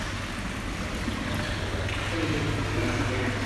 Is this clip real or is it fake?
real